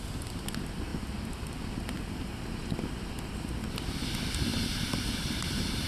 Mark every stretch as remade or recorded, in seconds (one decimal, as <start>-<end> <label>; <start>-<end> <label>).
0.0-4.5 recorded; 4.5-5.9 remade